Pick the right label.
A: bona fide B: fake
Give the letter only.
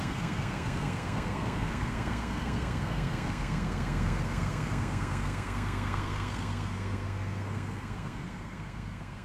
B